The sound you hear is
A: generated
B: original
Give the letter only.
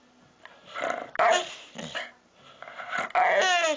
B